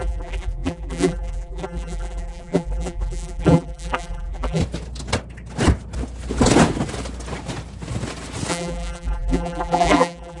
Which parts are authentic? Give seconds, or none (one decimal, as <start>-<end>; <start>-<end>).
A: 4.6-8.5